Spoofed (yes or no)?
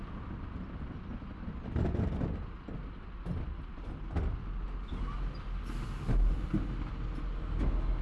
no